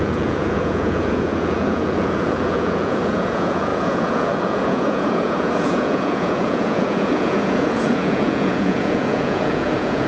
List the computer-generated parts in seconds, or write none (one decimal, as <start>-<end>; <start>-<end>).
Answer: 0.0-10.1